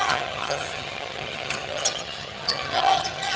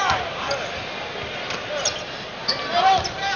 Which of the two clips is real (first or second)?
second